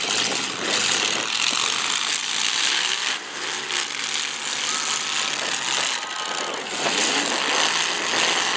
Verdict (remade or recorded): recorded